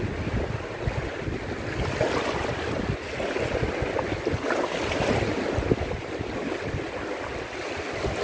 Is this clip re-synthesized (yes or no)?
no